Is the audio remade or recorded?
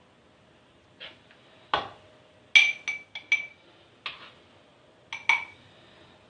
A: recorded